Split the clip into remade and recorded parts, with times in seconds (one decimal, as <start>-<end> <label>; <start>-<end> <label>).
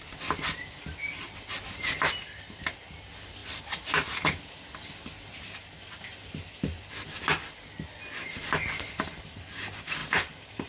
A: 0.0-10.0 recorded; 10.0-10.7 remade